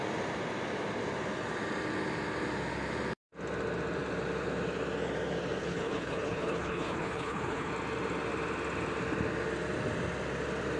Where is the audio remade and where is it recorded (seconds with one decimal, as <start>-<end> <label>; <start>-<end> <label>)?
0.0-5.6 recorded; 5.6-7.7 remade; 7.7-10.8 recorded